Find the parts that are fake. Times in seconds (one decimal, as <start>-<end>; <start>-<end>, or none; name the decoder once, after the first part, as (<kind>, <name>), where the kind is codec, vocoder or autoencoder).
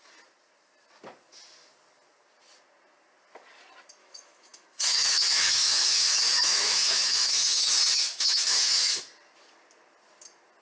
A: 4.0-9.0 (autoencoder, DAC-VAE)